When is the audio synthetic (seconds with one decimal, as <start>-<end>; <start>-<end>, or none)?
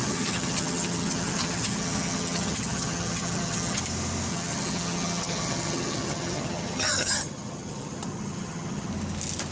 0.0-3.8; 4.3-8.9